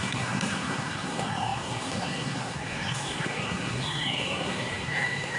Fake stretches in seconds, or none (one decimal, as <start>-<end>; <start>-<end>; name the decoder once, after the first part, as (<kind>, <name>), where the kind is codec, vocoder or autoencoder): 0.0-5.4 (codec, SNAC)